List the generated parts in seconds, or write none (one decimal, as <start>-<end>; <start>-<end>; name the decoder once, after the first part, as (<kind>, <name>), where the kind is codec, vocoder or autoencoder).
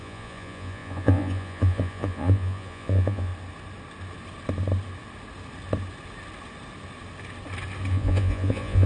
0.0-3.3 (vocoder, Vocos); 7.9-8.9